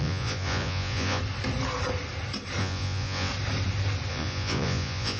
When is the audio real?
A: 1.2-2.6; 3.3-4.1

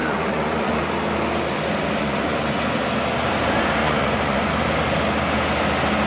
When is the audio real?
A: 0.8-2.0; 2.6-3.8; 4.5-6.1

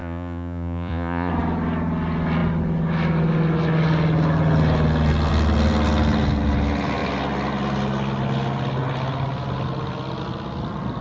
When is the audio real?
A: 1.3-11.0

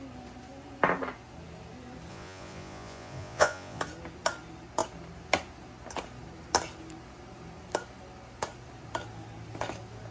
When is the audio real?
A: 0.0-2.1; 3.8-10.1

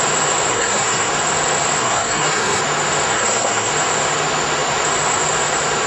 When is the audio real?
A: 0.0-0.5; 1.1-1.8; 2.6-3.1; 3.7-5.9

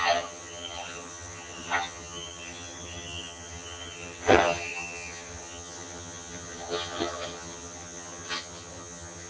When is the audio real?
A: none

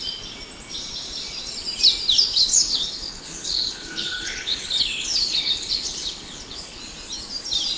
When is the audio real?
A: 0.0-2.3; 6.8-7.8